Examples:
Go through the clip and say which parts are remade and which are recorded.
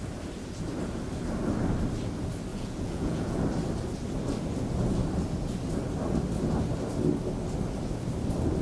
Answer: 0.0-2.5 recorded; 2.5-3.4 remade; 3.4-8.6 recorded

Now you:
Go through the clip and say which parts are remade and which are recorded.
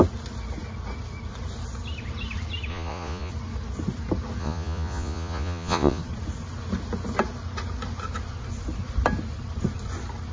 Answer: 0.0-2.7 recorded; 2.7-3.3 remade; 3.3-4.4 recorded; 4.4-6.0 remade; 6.0-10.3 recorded